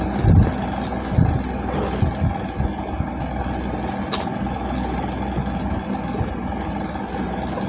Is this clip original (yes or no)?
yes